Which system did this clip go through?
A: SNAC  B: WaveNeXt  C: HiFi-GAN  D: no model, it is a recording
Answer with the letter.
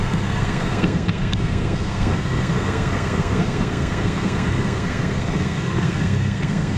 A